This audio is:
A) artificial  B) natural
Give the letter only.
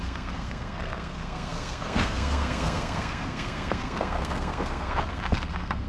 A